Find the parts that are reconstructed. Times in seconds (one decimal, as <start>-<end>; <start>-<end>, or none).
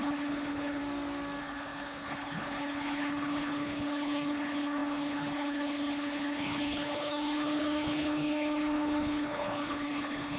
0.0-0.8; 1.4-10.4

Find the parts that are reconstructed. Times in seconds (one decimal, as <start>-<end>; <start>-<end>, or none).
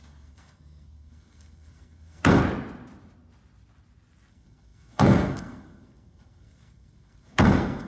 0.0-2.4; 4.3-7.9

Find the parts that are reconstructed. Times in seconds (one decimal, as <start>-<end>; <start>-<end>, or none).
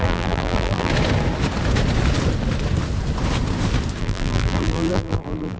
0.0-0.9; 4.0-5.6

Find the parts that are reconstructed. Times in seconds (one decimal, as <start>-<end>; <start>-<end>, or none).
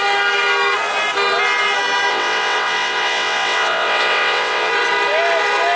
2.1-4.7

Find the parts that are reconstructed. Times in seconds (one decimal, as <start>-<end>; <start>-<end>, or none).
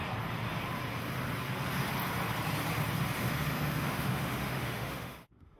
3.2-5.6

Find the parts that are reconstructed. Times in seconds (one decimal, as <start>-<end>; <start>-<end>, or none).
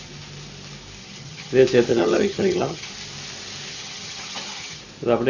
1.0-1.5; 1.9-2.9; 3.7-4.8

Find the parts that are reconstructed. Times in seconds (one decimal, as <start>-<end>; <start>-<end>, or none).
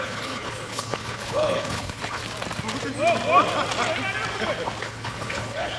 0.0-2.2; 4.8-5.8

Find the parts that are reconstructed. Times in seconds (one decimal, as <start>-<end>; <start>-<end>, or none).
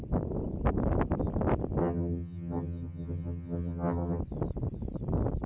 1.8-4.2